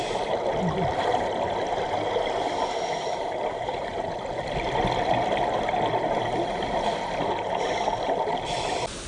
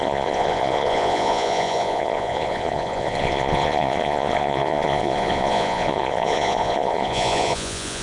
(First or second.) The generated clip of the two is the second